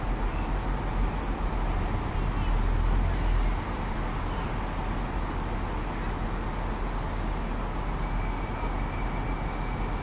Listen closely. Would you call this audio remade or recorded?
recorded